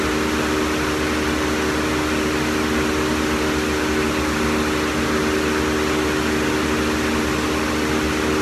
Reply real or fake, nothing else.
real